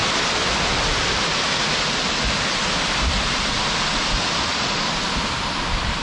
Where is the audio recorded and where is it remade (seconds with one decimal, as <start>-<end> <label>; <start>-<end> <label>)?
0.0-4.5 recorded; 4.5-5.2 remade; 5.2-6.0 recorded